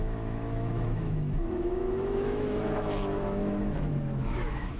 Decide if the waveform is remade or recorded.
remade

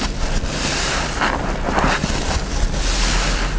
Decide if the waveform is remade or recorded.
recorded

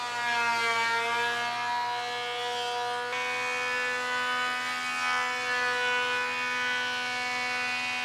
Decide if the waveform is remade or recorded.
recorded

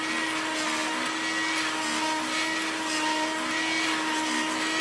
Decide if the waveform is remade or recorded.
recorded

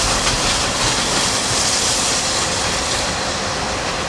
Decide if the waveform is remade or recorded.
recorded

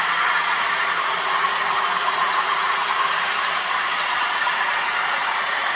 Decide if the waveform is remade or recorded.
remade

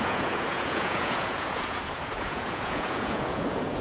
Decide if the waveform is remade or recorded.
remade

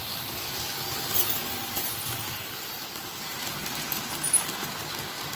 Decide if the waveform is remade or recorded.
recorded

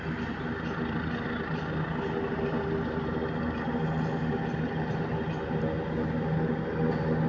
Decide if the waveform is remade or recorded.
recorded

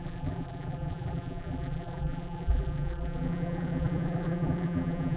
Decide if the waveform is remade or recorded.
remade